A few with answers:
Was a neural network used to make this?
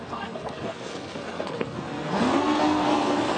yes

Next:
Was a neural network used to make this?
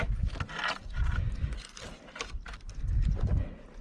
no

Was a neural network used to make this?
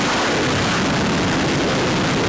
no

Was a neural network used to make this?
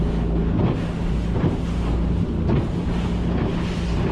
no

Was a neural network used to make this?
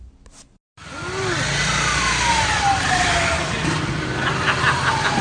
no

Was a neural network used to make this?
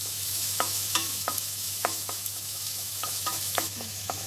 yes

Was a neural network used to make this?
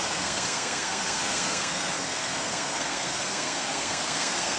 yes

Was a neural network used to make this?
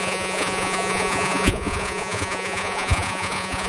yes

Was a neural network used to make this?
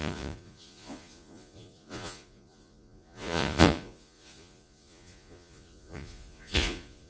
yes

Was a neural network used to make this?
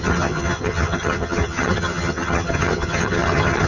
yes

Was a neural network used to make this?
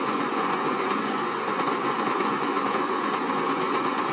yes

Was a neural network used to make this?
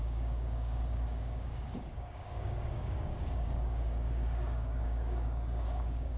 yes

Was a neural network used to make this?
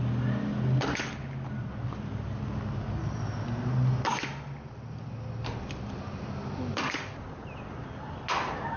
no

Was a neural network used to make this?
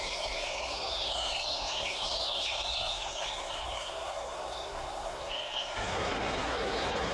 yes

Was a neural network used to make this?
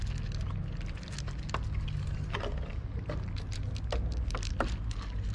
no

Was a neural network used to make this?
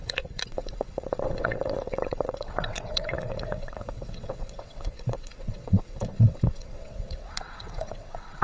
yes